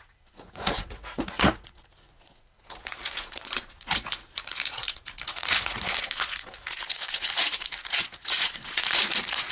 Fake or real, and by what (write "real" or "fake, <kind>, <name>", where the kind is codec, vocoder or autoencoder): fake, vocoder, Vocos